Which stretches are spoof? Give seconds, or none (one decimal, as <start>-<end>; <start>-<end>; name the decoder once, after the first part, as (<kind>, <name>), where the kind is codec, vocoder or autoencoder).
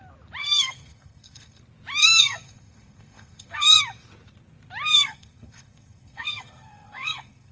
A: 0.4-1.6 (codec, SNAC); 2.0-3.8; 4.9-7.5